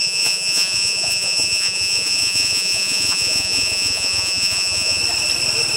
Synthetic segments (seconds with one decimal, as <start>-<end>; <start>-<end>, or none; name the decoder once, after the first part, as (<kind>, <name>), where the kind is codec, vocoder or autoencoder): 0.0-5.0 (vocoder, Vocos)